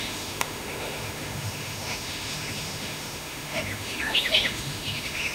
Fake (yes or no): yes